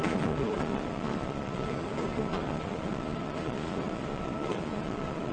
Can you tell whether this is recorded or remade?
remade